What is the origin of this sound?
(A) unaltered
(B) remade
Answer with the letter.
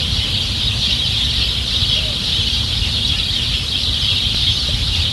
A